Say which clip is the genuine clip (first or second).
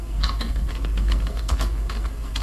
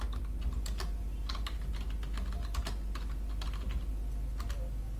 second